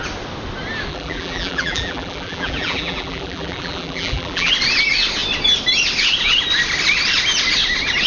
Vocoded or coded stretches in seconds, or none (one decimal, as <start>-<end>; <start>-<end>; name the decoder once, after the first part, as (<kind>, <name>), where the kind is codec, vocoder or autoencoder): 0.9-4.5 (vocoder, BigVGAN v2)